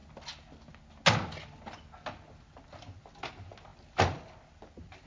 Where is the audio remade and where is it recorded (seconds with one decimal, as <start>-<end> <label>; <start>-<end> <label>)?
0.0-5.1 recorded